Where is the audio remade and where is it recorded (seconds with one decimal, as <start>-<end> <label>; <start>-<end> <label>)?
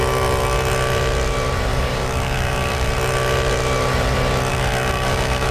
0.0-1.7 recorded; 1.7-2.9 remade; 2.9-4.5 recorded; 4.5-5.5 remade